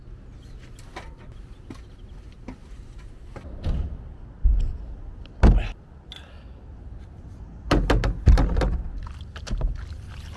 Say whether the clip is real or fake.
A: real